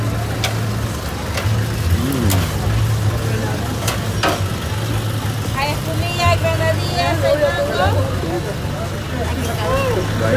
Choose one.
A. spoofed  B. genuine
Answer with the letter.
B